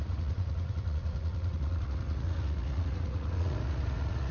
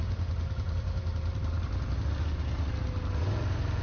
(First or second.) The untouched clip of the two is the second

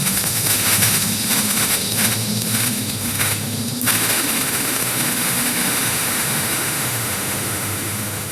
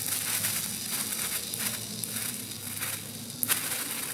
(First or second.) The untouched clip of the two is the second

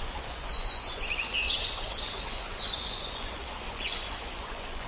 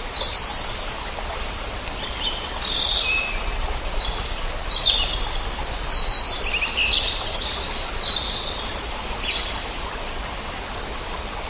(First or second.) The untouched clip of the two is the second